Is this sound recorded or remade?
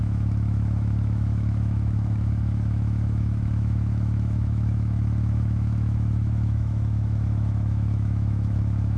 remade